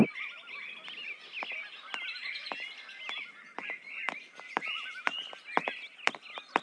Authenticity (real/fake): real